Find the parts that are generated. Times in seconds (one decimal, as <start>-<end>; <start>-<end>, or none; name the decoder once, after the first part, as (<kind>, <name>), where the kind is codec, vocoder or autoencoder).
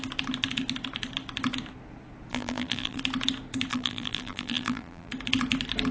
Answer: 2.3-3.0 (vocoder, BigVGAN v2); 3.7-5.1